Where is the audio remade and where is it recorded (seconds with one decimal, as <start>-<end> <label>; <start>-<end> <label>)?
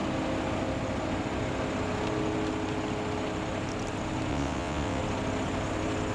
0.0-4.3 recorded; 4.3-5.0 remade; 5.0-6.1 recorded